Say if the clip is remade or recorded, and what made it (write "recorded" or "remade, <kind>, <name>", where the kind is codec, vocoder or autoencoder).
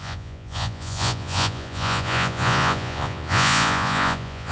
remade, vocoder, Vocos